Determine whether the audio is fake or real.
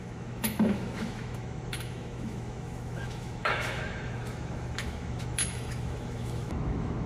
fake